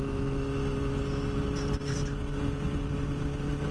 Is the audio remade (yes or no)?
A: no